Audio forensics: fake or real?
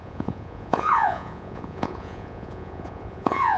fake